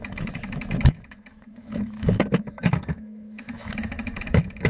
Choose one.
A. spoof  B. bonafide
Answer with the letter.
A